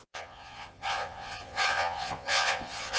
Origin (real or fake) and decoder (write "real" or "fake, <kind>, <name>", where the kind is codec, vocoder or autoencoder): fake, vocoder, Vocos